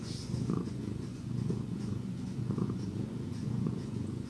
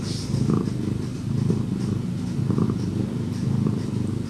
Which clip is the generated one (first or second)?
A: first